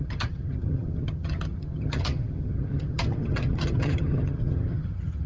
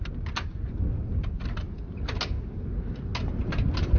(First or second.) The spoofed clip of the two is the first